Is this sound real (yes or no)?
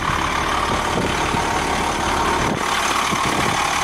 yes